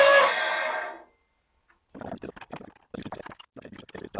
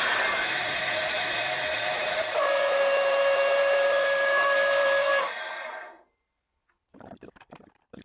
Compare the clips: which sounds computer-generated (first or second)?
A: second